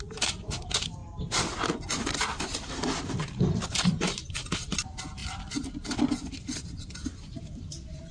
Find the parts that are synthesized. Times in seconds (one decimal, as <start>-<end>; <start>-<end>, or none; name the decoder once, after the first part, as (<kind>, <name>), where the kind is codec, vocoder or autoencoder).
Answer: 0.0-1.0 (vocoder, BigVGAN v2); 3.0-5.2; 7.4-8.1